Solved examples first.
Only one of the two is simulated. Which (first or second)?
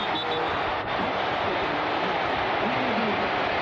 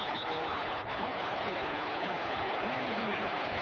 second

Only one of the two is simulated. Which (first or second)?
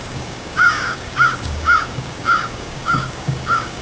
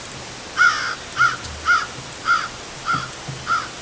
first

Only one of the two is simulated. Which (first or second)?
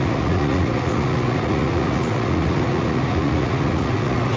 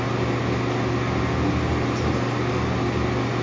first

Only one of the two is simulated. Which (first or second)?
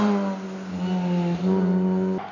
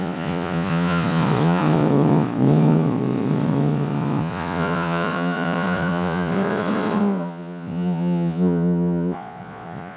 second